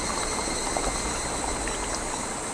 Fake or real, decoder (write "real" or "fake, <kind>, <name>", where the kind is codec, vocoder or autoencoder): real